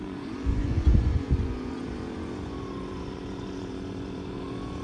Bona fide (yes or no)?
no